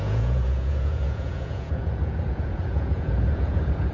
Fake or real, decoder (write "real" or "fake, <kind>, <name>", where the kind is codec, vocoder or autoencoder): fake, vocoder, Vocos